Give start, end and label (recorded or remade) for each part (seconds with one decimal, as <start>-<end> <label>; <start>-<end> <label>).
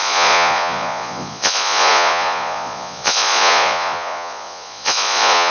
0.0-5.5 remade